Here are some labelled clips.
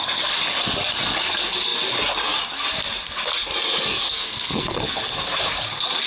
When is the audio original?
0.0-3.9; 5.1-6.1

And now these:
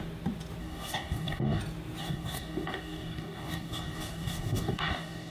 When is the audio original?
0.0-0.6; 1.6-2.0

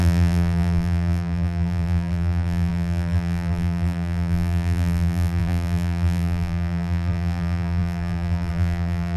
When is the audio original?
none

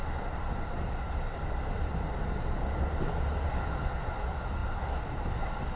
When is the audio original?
0.0-5.8